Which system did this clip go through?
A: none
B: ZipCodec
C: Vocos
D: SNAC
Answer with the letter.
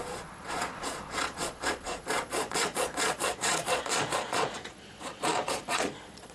C